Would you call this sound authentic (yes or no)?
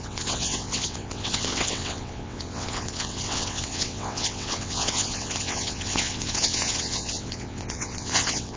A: no